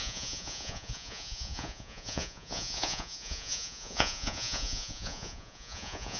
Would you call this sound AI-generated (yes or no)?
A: yes